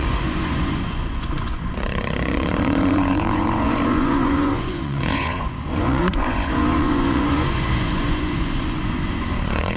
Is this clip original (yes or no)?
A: no